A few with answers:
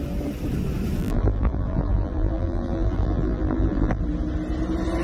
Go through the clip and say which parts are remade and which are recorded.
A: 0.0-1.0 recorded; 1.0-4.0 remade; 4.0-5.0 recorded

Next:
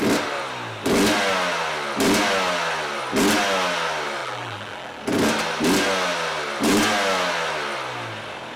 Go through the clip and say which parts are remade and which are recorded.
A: 0.0-4.2 recorded; 4.2-5.0 remade; 5.0-8.6 recorded

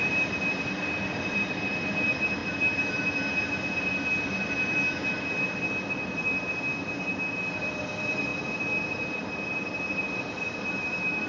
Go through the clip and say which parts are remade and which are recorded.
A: 0.0-2.4 remade; 2.4-7.5 recorded; 7.5-8.3 remade; 8.3-9.9 recorded; 9.9-11.3 remade

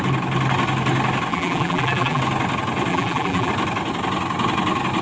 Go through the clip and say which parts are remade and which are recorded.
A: 0.0-1.3 recorded; 1.3-2.2 remade; 2.2-2.9 recorded; 2.9-3.5 remade; 3.5-5.0 recorded

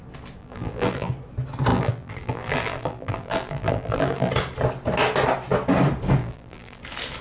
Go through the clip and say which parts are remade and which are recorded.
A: 0.0-0.4 recorded; 0.4-1.1 remade; 1.1-1.7 recorded; 1.7-4.3 remade; 4.3-6.2 recorded; 6.2-6.8 remade; 6.8-7.2 recorded

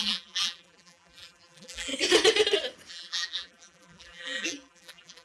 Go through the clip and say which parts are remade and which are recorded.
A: 0.0-1.9 remade; 1.9-2.9 recorded; 2.9-5.2 remade

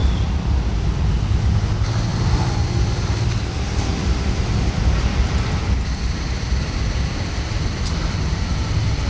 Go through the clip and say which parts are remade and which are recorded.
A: 0.0-1.1 remade; 1.1-2.1 recorded; 2.1-3.3 remade; 3.3-3.9 recorded; 3.9-5.1 remade; 5.1-5.6 recorded; 5.6-9.1 remade

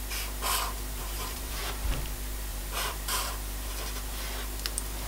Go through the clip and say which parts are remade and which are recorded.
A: 0.0-1.0 recorded; 1.0-1.6 remade; 1.6-2.5 recorded; 2.5-3.7 remade; 3.7-5.1 recorded